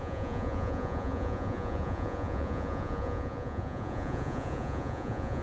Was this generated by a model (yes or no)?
yes